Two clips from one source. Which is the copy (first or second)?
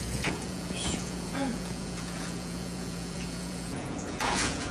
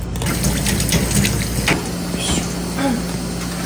first